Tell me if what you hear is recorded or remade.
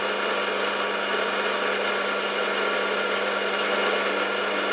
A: recorded